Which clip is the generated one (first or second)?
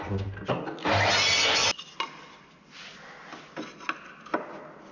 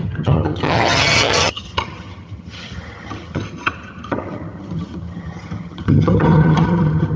second